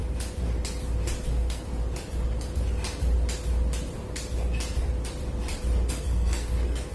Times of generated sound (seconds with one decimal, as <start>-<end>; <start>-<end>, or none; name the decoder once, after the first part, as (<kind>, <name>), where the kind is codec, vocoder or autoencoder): 1.3-1.8 (codec, SNAC); 5.9-6.9